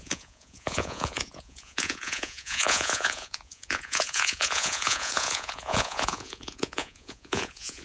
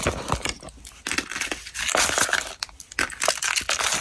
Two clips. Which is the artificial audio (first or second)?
first